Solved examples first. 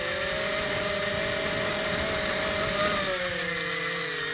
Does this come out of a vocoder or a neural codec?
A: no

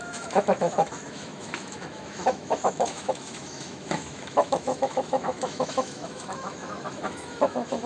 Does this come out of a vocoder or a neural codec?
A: yes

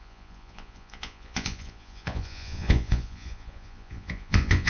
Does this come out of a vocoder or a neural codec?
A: yes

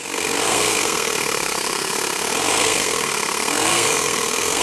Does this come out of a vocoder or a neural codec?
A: yes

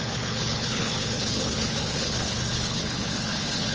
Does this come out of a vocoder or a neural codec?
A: yes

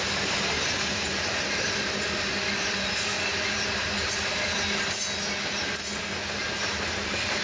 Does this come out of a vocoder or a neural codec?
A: no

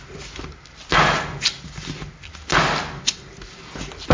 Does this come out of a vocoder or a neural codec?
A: no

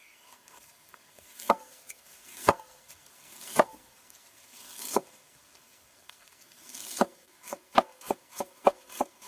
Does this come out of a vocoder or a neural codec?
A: yes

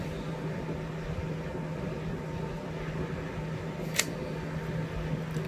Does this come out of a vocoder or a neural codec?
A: no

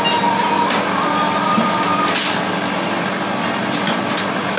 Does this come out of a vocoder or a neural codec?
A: no